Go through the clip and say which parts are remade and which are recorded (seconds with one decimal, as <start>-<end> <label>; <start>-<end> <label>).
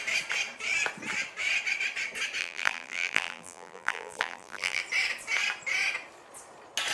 0.0-2.4 recorded; 2.4-4.8 remade; 4.8-6.9 recorded